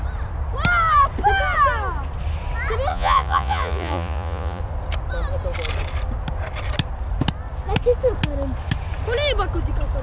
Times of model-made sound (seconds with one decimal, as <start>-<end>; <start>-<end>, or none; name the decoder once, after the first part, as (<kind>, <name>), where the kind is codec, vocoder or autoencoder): 2.9-4.6 (vocoder, Vocos)